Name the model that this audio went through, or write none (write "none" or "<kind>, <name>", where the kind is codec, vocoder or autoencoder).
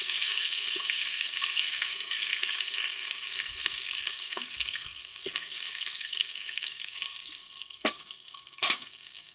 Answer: codec, SNAC